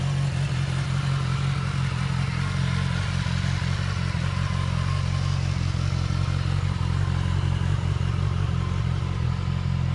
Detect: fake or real real